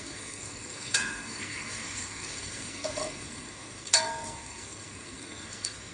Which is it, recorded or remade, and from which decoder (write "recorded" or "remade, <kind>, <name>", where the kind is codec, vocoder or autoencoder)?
remade, codec, SNAC